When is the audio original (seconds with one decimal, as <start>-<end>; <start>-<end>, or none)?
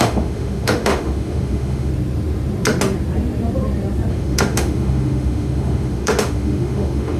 1.9-4.1